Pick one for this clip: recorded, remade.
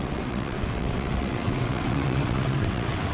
remade